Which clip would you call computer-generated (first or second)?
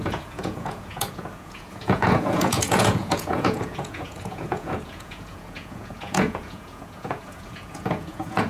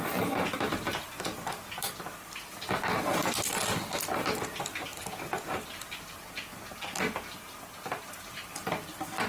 first